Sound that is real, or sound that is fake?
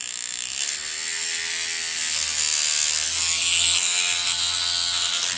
real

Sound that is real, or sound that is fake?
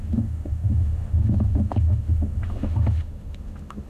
fake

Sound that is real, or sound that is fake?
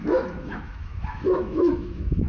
fake